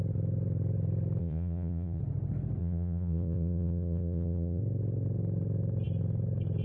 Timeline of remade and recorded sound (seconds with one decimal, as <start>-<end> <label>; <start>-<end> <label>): 0.0-1.2 recorded; 1.2-2.0 remade; 2.0-2.6 recorded; 2.6-4.6 remade; 4.6-6.6 recorded